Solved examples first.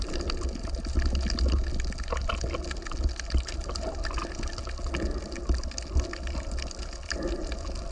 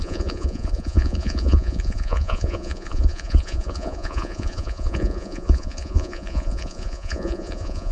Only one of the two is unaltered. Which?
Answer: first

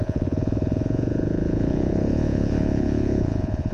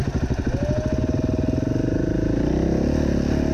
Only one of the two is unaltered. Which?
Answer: second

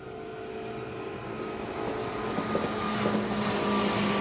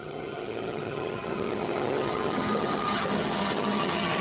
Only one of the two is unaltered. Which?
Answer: first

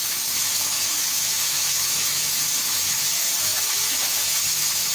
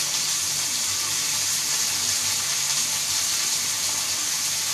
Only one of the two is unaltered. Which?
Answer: second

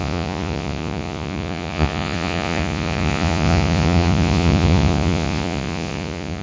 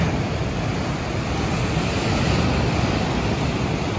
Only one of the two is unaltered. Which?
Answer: second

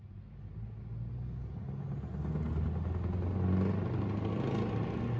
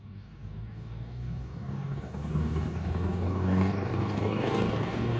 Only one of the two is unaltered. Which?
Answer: first